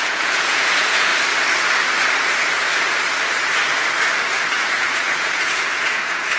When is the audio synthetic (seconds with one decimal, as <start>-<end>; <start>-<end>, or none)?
0.0-1.1; 4.7-6.4